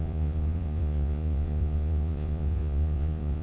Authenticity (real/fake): fake